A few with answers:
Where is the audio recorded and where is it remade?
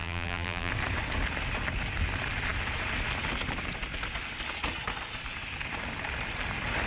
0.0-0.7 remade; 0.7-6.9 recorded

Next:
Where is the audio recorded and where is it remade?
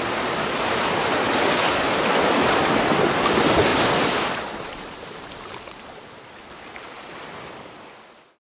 0.0-8.6 recorded